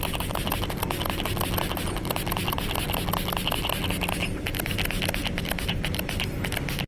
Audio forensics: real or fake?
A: real